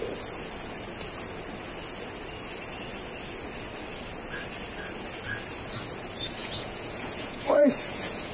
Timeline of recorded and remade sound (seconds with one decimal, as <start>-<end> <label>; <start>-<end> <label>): 0.0-6.4 recorded; 6.4-8.3 remade